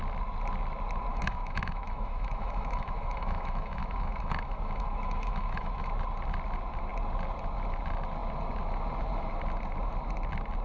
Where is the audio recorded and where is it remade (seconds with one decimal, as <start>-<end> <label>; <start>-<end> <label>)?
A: 0.0-1.1 recorded; 1.1-5.9 remade; 5.9-10.6 recorded